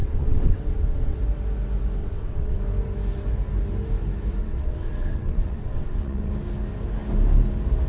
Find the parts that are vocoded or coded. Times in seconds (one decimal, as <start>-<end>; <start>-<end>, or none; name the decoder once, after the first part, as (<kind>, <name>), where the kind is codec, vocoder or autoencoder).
0.0-1.2 (vocoder, WaveNeXt); 2.0-2.6; 4.4-6.3